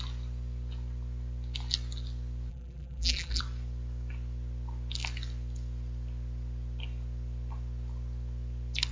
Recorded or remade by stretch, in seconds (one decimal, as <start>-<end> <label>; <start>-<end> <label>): 0.0-2.5 recorded; 2.5-3.4 remade; 3.4-8.9 recorded